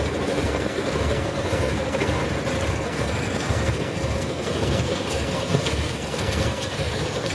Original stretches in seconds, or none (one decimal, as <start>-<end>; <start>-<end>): 2.2-2.7